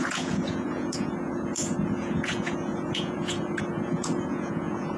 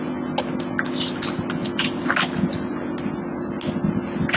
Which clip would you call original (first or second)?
second